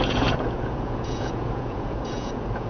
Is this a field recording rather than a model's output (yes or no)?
no